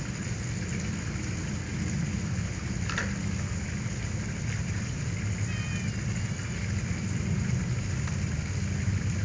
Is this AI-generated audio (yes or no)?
no